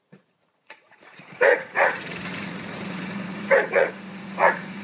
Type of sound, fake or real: fake